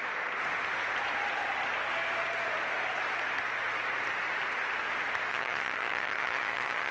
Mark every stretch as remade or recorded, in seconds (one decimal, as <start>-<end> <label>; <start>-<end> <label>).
0.0-5.3 recorded; 5.3-6.9 remade